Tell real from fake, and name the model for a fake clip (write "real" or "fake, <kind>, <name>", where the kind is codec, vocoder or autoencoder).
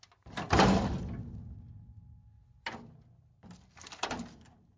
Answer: real